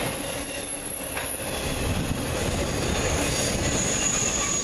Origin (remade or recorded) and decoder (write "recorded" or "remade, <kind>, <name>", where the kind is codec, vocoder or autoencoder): recorded